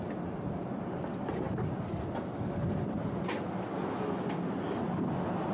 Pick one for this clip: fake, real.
real